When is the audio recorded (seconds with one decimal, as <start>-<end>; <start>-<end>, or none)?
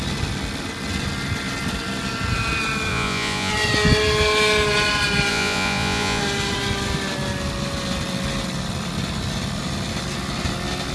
0.0-2.9; 3.5-5.3; 6.2-10.9